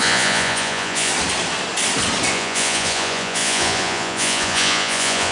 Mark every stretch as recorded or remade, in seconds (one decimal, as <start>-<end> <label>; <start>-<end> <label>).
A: 0.0-1.1 remade; 1.1-2.3 recorded; 2.3-5.3 remade